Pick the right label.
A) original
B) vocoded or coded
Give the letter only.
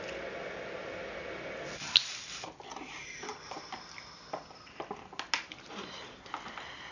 A